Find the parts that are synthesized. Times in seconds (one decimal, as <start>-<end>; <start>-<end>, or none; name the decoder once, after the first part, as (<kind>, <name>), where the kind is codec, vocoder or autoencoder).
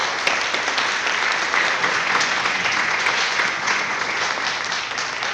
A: 1.8-4.3 (vocoder, Vocos)